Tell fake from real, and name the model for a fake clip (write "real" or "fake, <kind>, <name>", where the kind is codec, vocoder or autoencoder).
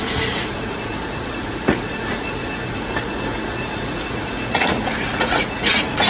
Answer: fake, vocoder, Vocos